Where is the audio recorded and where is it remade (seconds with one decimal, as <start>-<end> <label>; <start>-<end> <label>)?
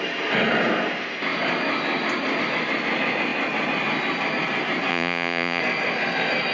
0.0-4.9 recorded; 4.9-5.6 remade; 5.6-6.5 recorded